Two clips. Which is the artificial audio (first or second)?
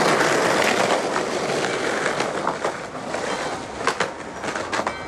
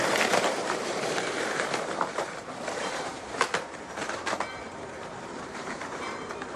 second